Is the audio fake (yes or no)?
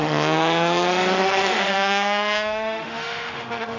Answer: yes